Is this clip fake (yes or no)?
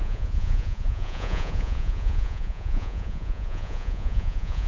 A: yes